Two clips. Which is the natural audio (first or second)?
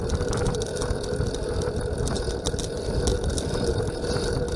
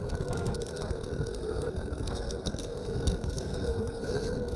first